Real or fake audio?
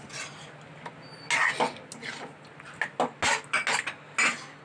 real